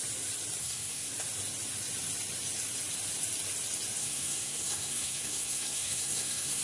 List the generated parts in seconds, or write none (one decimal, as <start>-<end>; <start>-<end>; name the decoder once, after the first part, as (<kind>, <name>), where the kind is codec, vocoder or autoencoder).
0.6-1.1 (codec, SNAC); 4.0-6.6